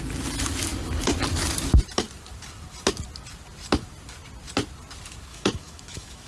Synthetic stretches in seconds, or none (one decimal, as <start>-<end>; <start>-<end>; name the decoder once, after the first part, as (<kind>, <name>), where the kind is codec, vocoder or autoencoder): 5.3-6.3 (autoencoder, DAC-VAE)